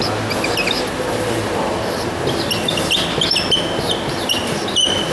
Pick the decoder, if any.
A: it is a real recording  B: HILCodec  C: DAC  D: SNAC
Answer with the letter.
A